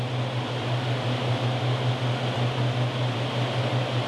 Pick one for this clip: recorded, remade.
recorded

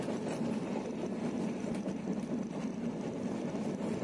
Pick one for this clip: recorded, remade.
recorded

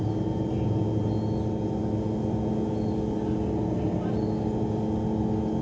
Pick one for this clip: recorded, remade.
recorded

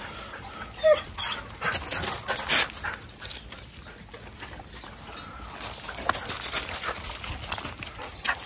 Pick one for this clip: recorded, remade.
recorded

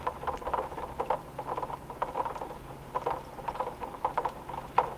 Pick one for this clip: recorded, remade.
recorded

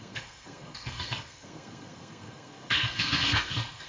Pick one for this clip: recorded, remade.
remade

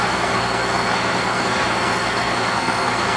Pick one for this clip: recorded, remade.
remade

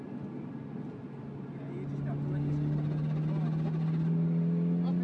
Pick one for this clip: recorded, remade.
recorded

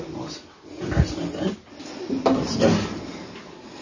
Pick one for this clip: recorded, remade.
recorded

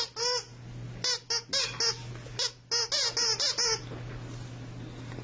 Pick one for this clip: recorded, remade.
recorded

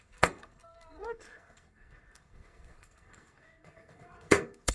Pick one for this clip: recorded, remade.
remade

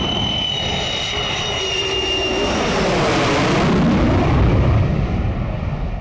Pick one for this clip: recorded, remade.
recorded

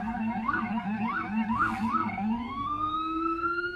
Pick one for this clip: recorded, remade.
remade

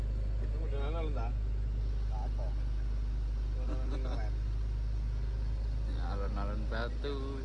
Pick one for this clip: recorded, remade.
recorded